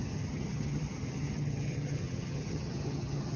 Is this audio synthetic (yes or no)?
yes